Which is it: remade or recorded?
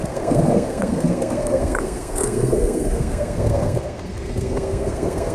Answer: remade